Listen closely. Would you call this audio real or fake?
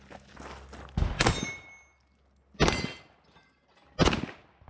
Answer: real